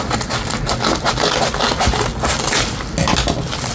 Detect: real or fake real